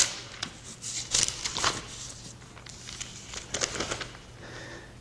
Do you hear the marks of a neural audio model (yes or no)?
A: no